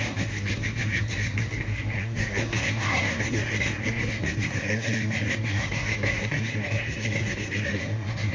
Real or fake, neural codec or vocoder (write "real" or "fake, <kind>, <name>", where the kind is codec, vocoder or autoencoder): fake, codec, SNAC